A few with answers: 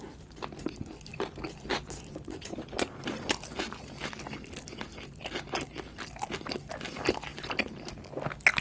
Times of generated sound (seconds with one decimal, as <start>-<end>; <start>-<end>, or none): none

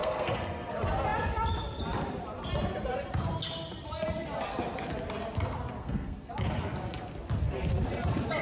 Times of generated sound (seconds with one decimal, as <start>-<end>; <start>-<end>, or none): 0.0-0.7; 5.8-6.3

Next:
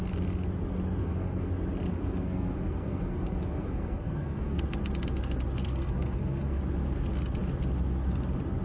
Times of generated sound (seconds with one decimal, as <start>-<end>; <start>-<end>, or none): 1.0-1.5; 1.9-4.6; 5.6-6.6

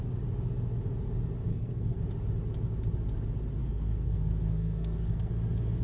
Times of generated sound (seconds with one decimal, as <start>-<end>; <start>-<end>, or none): 1.5-2.0; 3.6-5.3

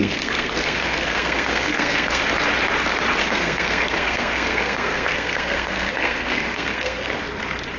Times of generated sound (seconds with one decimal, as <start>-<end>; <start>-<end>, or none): 0.0-2.2; 3.2-7.2

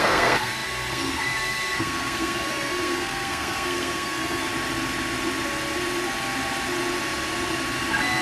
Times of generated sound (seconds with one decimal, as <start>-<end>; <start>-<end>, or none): 0.0-4.5

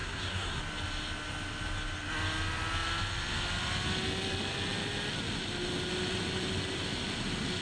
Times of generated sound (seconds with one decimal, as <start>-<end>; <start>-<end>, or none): 0.0-0.6